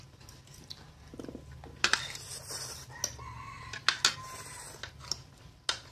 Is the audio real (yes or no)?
yes